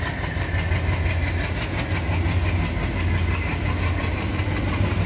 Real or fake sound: real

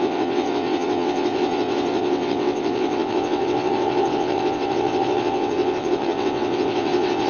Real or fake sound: fake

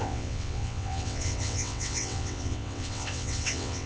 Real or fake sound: fake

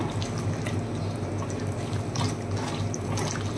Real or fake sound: real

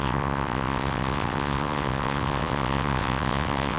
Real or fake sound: fake